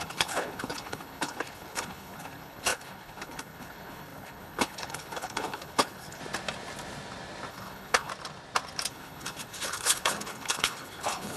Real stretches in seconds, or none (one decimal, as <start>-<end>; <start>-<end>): 6.2-7.5; 8.1-8.9